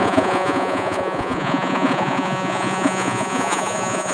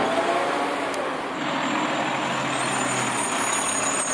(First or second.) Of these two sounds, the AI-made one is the first